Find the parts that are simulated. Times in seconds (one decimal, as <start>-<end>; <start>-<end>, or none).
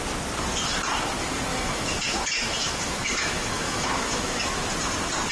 1.5-4.7